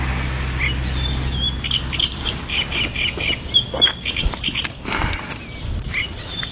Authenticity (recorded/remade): recorded